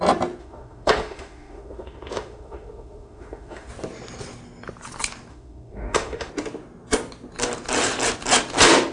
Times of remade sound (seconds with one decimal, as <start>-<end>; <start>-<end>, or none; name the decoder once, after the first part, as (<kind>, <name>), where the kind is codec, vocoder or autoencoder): 0.4-3.7 (autoencoder, DAC-VAE); 5.3-6.3